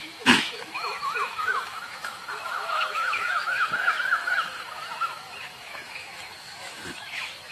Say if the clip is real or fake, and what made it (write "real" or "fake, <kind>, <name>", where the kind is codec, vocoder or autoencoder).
fake, autoencoder, DAC-VAE